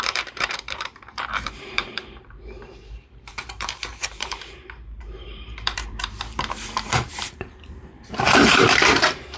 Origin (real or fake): fake